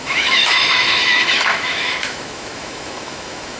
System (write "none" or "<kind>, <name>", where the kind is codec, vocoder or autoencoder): autoencoder, DAC-VAE